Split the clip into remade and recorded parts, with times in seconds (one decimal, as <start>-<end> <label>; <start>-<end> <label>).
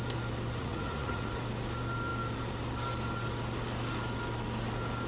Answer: 0.0-0.6 recorded; 0.6-1.3 remade; 1.3-5.1 recorded